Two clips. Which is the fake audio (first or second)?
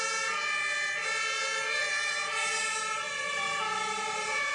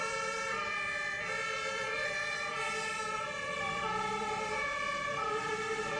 second